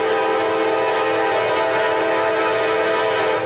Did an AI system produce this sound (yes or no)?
no